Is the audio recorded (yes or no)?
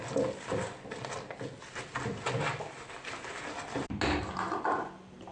yes